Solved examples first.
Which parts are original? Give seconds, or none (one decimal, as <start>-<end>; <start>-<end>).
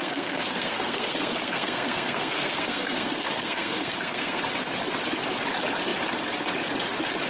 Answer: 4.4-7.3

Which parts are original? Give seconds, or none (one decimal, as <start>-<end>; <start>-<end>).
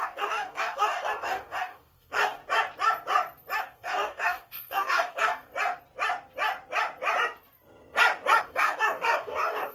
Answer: 2.4-3.6; 5.5-8.4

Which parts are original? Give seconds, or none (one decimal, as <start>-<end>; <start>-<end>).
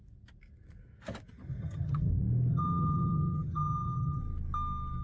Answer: 0.0-1.5; 2.1-2.5; 4.2-5.0